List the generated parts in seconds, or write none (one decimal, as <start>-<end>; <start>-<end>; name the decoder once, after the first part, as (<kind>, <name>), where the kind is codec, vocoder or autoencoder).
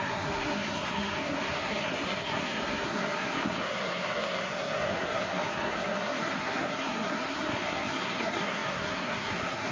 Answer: 0.0-9.7 (codec, SNAC)